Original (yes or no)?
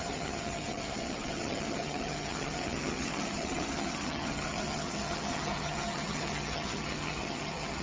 no